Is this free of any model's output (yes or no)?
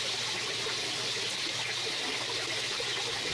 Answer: yes